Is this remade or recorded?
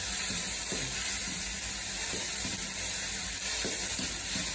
recorded